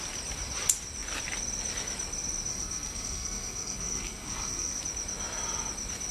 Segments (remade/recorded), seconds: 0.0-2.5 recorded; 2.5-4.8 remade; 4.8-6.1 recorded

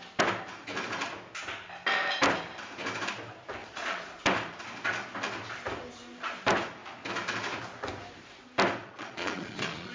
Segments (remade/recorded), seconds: 0.0-3.6 recorded; 3.6-4.2 remade; 4.2-8.8 recorded; 8.8-9.9 remade

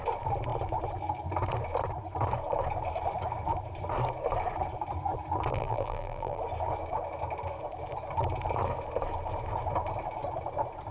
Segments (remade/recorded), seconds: 0.0-5.5 recorded; 5.5-6.4 remade; 6.4-10.9 recorded

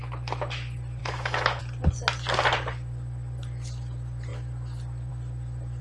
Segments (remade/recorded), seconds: 0.0-1.0 recorded; 1.0-1.6 remade; 1.6-5.8 recorded

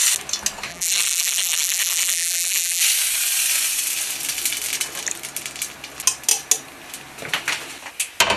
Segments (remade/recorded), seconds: 0.0-0.7 recorded; 0.7-2.8 remade; 2.8-8.4 recorded

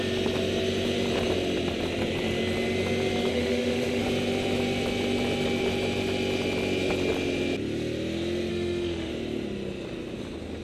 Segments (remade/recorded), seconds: 0.0-3.3 recorded; 3.3-4.0 remade; 4.0-8.5 recorded; 8.5-9.1 remade; 9.1-10.6 recorded

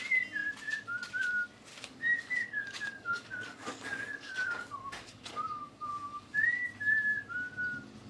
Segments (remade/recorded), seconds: 0.0-1.7 recorded; 1.7-6.6 remade; 6.6-8.1 recorded

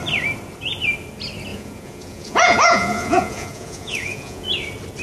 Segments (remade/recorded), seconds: 0.0-1.5 recorded; 1.5-4.5 remade; 4.5-5.0 recorded